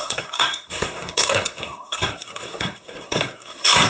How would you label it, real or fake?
fake